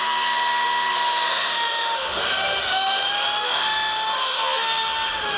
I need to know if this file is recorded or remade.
remade